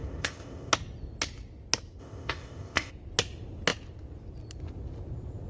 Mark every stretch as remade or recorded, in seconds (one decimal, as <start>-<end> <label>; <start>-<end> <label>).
0.0-0.7 remade; 0.7-2.0 recorded; 2.0-2.9 remade; 2.9-5.5 recorded